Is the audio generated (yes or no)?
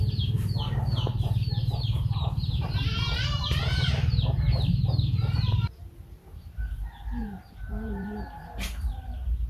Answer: yes